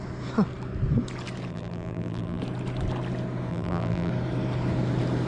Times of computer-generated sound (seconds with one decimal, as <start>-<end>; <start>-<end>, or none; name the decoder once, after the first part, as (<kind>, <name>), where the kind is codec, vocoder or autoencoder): 1.5-2.4 (vocoder, BigVGAN v2); 3.5-4.1